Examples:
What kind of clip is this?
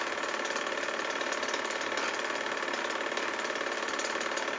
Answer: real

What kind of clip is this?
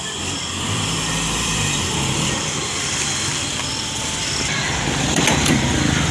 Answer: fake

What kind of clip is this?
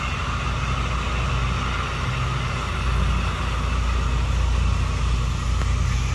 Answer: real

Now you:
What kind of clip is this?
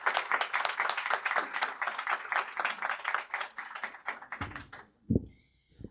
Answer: real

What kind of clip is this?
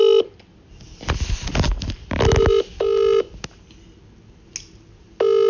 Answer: real